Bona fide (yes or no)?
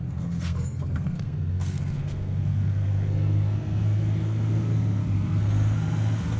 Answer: no